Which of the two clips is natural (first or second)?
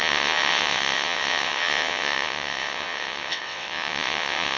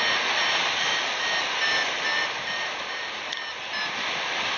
second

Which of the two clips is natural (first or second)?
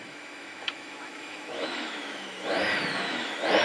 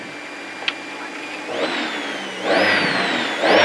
second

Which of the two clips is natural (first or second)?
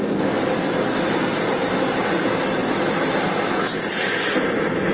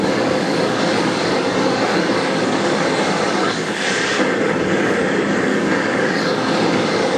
first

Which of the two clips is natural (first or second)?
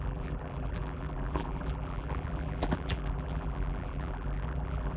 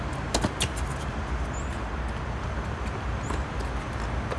second